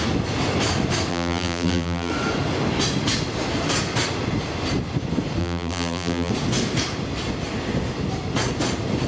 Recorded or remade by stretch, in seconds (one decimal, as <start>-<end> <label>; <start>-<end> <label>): 0.0-1.1 recorded; 1.1-2.1 remade; 2.1-5.4 recorded; 5.4-6.3 remade; 6.3-9.1 recorded